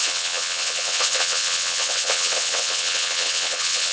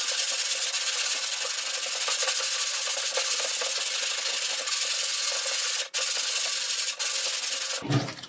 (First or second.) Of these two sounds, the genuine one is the second